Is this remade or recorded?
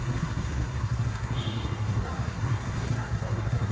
remade